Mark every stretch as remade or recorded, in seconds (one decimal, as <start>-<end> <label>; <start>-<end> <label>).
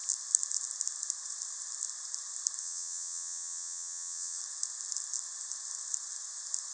0.0-2.6 recorded; 2.6-4.4 remade; 4.4-6.7 recorded